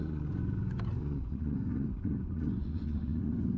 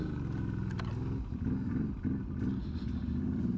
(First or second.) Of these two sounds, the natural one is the second